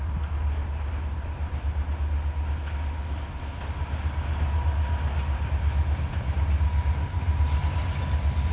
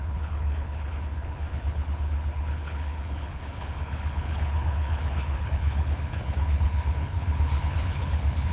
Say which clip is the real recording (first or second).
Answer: first